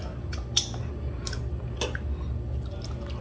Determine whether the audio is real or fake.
real